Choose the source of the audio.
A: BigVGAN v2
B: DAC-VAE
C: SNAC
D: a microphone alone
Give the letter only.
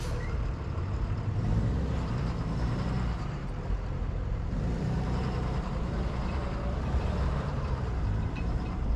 A